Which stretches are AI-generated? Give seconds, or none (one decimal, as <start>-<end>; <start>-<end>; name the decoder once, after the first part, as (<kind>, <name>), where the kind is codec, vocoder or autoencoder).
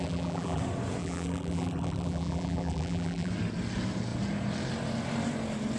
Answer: 0.0-0.6 (vocoder, BigVGAN v2); 1.0-3.3